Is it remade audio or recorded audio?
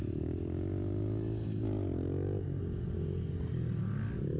recorded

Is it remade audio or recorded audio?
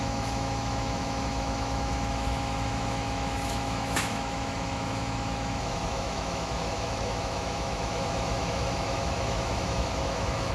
remade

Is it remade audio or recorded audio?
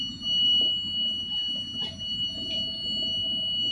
recorded